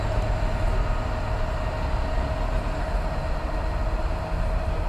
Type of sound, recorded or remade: recorded